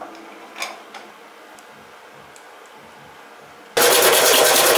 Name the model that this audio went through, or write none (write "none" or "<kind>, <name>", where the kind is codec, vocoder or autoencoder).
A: none